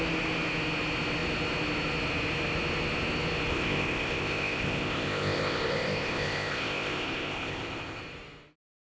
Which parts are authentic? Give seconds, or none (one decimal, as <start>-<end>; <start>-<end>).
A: 0.0-3.5; 8.0-8.8